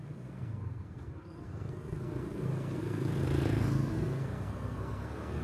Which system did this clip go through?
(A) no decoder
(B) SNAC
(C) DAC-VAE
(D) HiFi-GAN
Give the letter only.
B